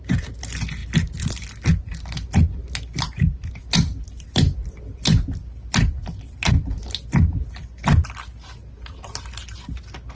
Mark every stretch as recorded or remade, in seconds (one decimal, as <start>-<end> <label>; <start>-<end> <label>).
0.0-10.2 recorded